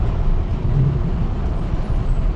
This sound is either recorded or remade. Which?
recorded